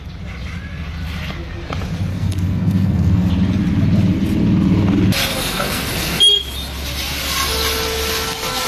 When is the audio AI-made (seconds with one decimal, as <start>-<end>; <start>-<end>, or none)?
2.1-3.3; 5.3-6.2